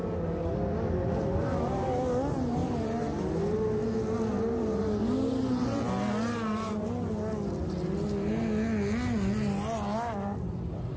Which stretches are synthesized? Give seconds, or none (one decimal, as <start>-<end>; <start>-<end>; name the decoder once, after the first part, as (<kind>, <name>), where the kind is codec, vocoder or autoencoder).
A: none